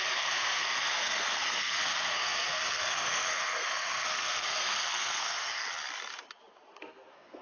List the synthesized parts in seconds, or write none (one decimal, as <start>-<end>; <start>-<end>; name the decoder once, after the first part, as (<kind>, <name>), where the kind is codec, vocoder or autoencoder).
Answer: 0.0-5.6 (codec, SNAC); 6.8-7.4